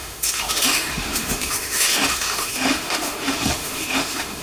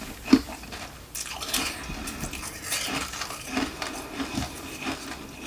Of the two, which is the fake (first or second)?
first